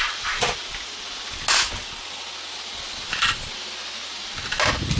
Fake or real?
real